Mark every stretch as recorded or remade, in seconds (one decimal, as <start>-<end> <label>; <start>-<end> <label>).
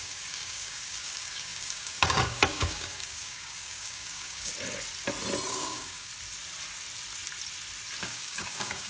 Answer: 0.0-4.5 remade; 4.5-5.5 recorded; 5.5-6.1 remade; 6.1-8.0 recorded; 8.0-8.9 remade